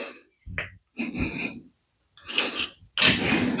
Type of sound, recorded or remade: recorded